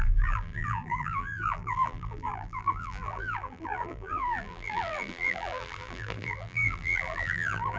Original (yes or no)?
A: no